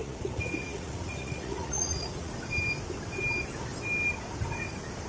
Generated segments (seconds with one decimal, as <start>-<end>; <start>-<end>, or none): 0.0-2.3